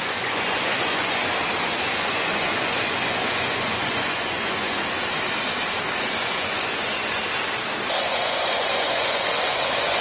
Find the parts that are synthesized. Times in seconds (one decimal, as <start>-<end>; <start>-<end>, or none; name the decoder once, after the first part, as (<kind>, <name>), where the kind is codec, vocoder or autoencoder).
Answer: 0.0-1.2 (vocoder, Vocos); 1.7-4.8; 6.0-7.2; 8.0-10.0